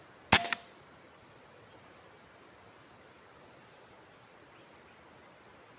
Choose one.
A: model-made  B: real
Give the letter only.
B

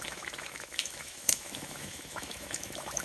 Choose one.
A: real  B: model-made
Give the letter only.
B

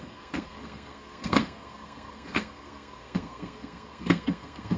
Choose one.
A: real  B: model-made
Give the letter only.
B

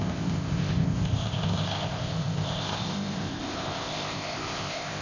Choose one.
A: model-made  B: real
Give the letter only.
A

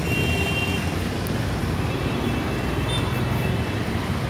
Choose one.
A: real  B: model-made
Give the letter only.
A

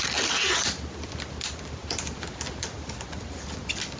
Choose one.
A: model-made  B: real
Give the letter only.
A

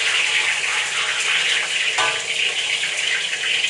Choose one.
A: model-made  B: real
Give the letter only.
B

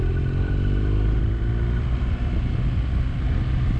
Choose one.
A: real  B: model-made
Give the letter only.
B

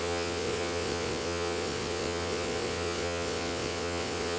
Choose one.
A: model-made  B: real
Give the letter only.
A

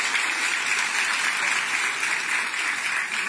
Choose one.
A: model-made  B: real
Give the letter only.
B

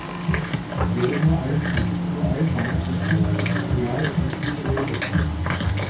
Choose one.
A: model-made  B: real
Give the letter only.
B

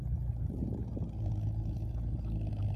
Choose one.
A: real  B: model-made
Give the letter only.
A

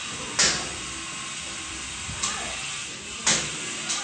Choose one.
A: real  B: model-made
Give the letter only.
A